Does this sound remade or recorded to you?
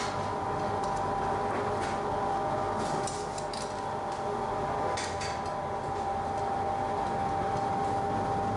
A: recorded